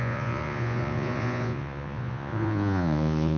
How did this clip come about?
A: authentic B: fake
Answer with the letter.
B